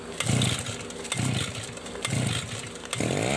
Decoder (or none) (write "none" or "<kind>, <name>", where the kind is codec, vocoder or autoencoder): none